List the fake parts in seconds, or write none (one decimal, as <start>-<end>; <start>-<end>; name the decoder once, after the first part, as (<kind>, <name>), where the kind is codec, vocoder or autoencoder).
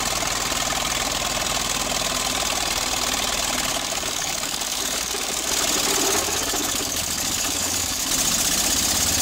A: 3.7-5.5 (codec, DAC); 6.2-8.1